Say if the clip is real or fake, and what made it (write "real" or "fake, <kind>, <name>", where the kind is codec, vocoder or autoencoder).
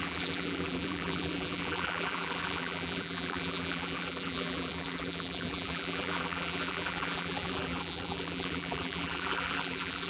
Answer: fake, vocoder, BigVGAN v2